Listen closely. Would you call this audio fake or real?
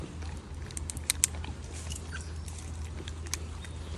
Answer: real